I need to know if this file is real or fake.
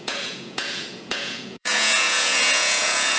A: fake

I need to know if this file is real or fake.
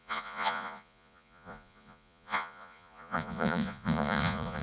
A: fake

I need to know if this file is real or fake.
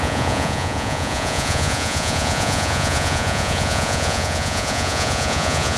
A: fake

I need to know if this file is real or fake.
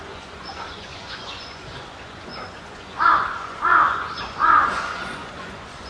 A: fake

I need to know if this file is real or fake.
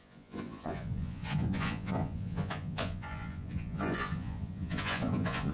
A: fake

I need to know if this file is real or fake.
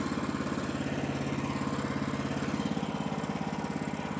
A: real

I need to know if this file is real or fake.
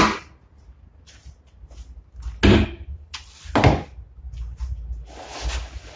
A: real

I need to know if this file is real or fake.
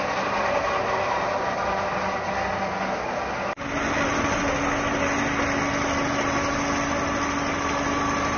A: real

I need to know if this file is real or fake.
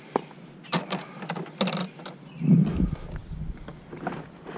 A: real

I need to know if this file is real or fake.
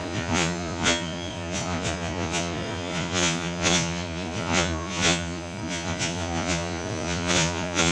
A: fake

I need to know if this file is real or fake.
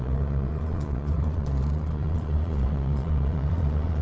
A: fake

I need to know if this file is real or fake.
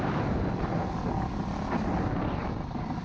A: real